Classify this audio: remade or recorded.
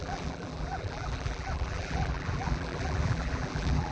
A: remade